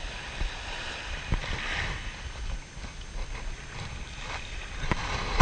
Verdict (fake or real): real